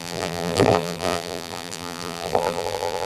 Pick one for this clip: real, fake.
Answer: fake